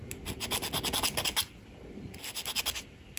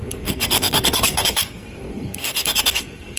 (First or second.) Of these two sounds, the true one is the first